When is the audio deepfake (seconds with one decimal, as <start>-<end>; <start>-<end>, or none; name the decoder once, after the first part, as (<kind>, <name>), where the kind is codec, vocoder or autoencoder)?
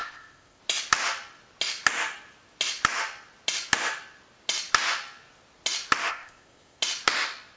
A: 0.0-0.6 (codec, ZipCodec); 6.1-6.8